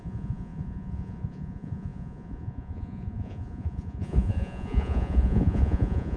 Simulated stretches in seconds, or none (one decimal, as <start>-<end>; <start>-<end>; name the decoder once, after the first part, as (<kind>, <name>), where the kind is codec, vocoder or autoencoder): 0.0-6.2 (vocoder, Vocos)